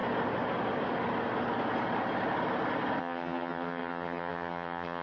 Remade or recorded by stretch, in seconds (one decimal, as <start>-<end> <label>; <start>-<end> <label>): 0.0-3.0 recorded; 3.0-5.0 remade